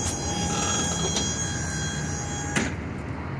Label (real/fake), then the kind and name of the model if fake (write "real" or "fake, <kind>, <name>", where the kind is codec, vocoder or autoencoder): real